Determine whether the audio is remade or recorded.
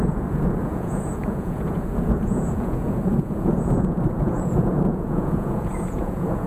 remade